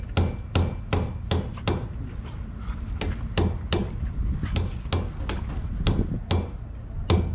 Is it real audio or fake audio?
real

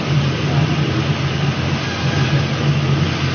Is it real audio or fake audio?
real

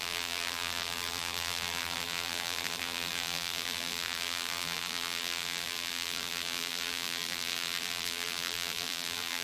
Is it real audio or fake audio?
fake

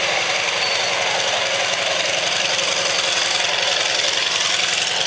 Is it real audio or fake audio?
real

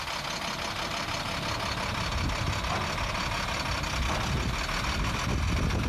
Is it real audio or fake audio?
real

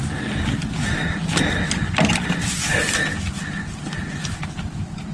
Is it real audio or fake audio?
real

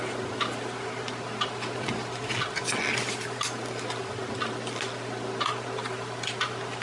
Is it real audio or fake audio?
real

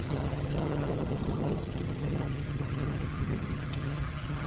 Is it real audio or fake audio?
fake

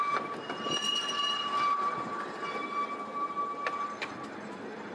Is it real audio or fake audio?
real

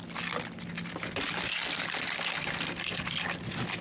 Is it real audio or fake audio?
real